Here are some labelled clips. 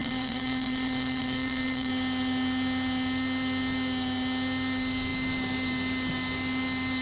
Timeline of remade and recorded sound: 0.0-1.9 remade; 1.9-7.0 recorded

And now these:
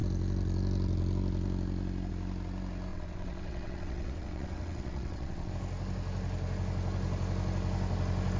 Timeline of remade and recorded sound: 0.0-2.9 recorded; 2.9-5.5 remade; 5.5-8.4 recorded

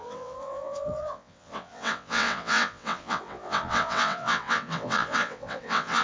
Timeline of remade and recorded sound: 0.0-6.0 remade

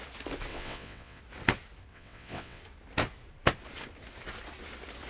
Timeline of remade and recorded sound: 0.0-0.5 recorded; 0.5-1.2 remade; 1.2-1.9 recorded; 1.9-2.6 remade; 2.6-5.1 recorded

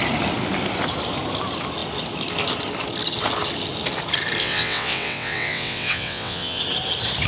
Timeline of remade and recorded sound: 0.0-4.4 recorded; 4.4-6.6 remade; 6.6-7.3 recorded